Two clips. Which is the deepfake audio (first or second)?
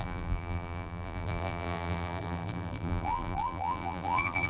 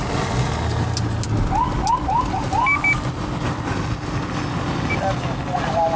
first